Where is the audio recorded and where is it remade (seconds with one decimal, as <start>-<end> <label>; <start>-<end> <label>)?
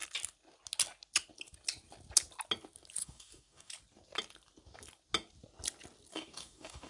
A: 0.0-3.0 recorded; 3.0-3.7 remade; 3.7-6.1 recorded; 6.1-6.9 remade